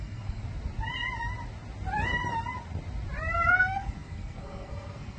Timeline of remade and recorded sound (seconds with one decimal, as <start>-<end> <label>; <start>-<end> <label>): 0.0-0.4 remade; 0.4-3.5 recorded; 3.5-5.2 remade